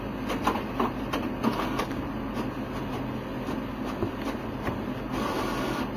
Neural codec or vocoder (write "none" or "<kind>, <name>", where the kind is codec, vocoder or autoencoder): none